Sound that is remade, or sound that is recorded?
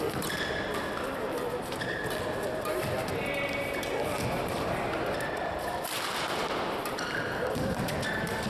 recorded